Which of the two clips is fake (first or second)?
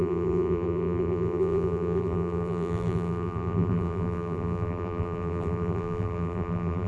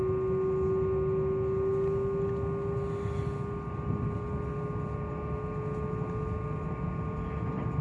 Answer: first